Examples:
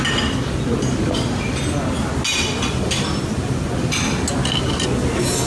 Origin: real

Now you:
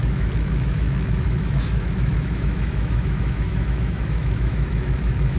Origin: fake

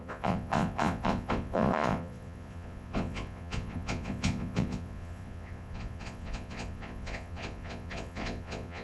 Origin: fake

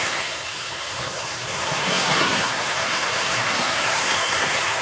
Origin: fake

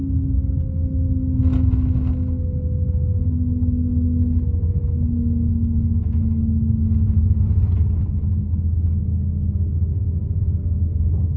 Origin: real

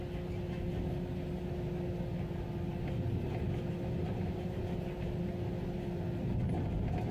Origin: real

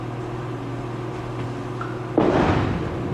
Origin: real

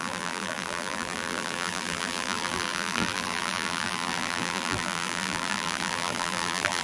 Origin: fake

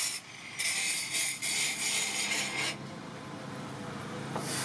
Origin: real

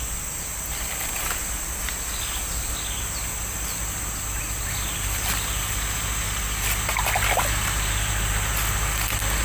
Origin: real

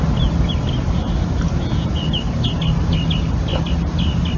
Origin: real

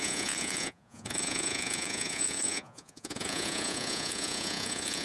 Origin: fake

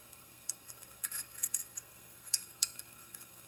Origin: fake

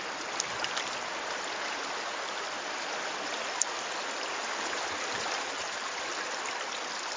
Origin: real